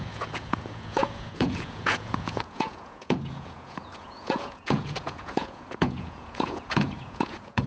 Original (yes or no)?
no